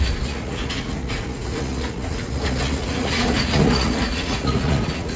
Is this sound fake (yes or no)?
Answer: yes